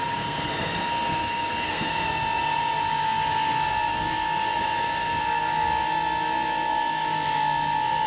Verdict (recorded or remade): remade